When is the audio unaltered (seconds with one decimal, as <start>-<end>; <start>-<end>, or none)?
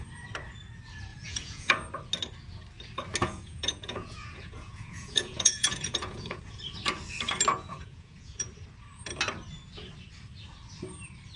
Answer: 0.0-1.1; 1.7-3.2; 6.4-7.5; 8.5-11.4